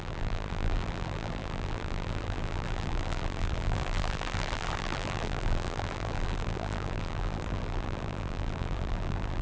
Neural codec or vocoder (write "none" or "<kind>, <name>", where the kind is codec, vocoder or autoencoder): vocoder, BigVGAN v2